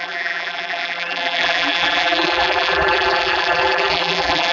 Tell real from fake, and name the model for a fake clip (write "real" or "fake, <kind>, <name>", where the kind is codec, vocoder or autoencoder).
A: fake, vocoder, BigVGAN v2